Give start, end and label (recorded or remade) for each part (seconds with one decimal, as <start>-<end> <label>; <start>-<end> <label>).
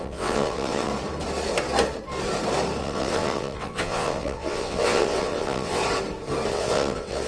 0.0-0.9 remade; 0.9-2.8 recorded; 2.8-5.8 remade; 5.8-6.5 recorded; 6.5-7.3 remade